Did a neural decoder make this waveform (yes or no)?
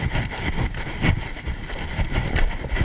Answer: no